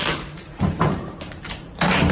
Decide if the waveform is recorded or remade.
remade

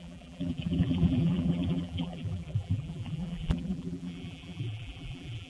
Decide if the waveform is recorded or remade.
remade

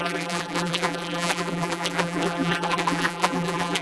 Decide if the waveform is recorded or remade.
remade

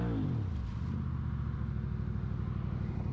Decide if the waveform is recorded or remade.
recorded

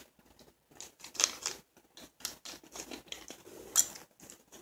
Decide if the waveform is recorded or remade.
recorded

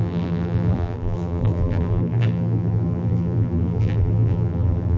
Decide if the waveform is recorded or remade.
remade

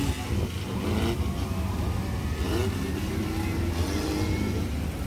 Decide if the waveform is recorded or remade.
recorded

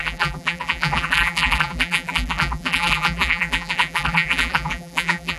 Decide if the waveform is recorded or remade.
remade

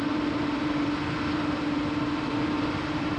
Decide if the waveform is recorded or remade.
remade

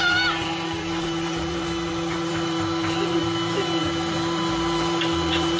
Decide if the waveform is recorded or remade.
remade